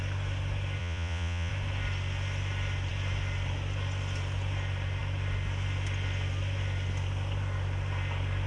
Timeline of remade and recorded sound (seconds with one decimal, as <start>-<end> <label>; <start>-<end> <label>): 0.0-0.8 recorded; 0.8-1.5 remade; 1.5-8.5 recorded